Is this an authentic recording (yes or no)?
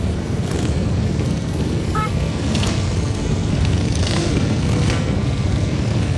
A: no